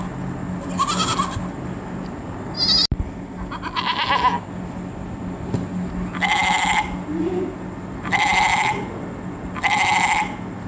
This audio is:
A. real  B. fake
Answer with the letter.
A